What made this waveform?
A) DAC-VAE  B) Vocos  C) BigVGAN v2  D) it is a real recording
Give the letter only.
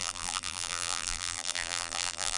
C